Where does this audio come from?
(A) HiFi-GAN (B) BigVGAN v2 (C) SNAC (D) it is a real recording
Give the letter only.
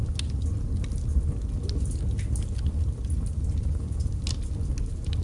D